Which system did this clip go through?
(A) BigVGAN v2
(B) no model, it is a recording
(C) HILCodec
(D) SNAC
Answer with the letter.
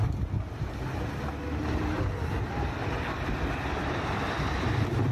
B